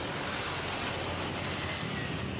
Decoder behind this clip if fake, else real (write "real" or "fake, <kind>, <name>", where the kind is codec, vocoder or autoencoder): real